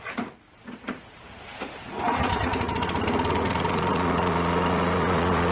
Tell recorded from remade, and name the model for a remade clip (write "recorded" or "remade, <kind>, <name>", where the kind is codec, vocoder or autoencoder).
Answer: remade, vocoder, Vocos